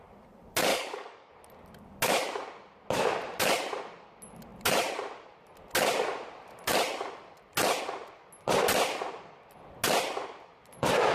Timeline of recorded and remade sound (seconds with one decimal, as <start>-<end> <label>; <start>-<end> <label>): 0.0-0.7 recorded; 0.7-1.3 remade; 1.3-11.1 recorded